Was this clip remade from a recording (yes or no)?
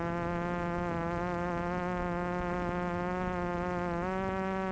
no